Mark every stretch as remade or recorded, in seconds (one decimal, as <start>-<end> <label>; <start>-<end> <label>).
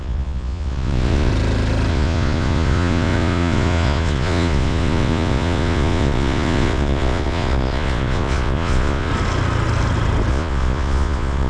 0.0-1.3 remade; 1.3-1.9 recorded; 1.9-9.1 remade; 9.1-10.3 recorded; 10.3-11.5 remade